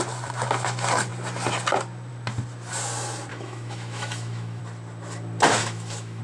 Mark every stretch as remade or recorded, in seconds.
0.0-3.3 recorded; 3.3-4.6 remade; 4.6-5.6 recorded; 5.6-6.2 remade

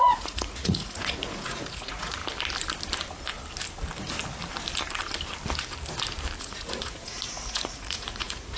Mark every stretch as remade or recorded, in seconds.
0.0-2.2 remade; 2.2-6.4 recorded; 6.4-8.6 remade

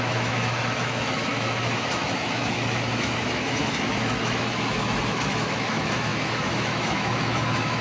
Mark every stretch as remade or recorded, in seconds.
0.0-7.8 remade

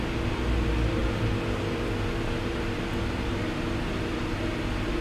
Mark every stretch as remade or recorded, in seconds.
0.0-5.0 recorded

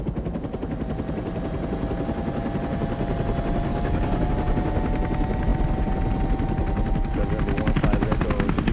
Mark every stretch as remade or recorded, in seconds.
0.0-3.7 recorded; 3.7-4.3 remade; 4.3-8.7 recorded

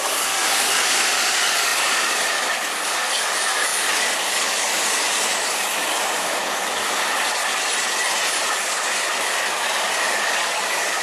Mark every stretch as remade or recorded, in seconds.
0.0-7.4 remade; 7.4-8.3 recorded; 8.3-11.0 remade

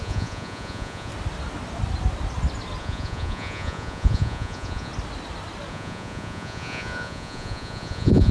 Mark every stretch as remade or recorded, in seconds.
0.0-1.1 remade; 1.1-2.8 recorded; 2.8-4.9 remade; 4.9-5.7 recorded; 5.7-8.3 remade

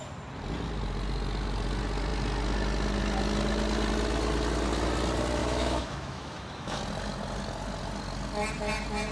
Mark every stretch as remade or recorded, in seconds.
0.0-5.4 recorded; 5.4-6.8 remade; 6.8-9.1 recorded